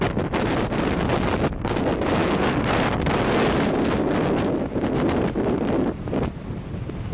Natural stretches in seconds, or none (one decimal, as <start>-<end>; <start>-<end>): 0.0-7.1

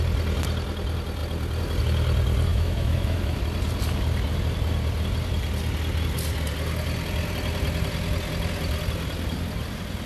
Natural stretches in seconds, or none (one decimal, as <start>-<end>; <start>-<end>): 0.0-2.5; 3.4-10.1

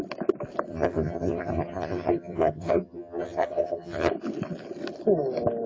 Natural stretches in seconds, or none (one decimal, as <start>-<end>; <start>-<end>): 0.0-0.7; 4.1-5.7

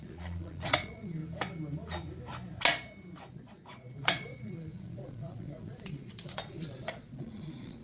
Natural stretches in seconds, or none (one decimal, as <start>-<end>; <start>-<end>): 1.2-3.3